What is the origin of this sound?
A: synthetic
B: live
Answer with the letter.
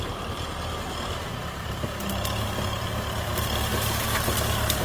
A